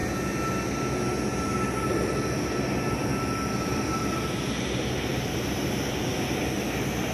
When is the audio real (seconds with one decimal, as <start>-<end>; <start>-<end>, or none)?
0.0-5.1; 6.6-7.1